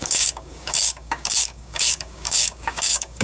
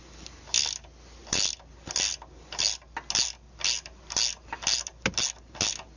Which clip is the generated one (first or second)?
first